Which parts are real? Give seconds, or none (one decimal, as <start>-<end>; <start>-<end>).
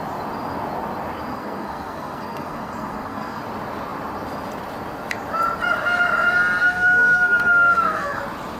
0.0-1.3; 3.4-6.6; 8.2-8.6